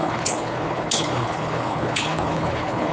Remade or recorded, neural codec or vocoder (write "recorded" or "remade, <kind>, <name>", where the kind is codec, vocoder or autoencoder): remade, codec, HILCodec